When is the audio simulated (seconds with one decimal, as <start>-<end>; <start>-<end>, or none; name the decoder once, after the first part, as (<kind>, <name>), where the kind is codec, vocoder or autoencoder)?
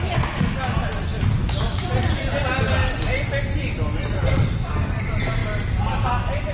none